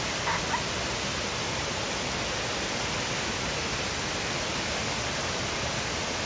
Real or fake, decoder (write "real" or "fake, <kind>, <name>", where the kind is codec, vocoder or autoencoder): real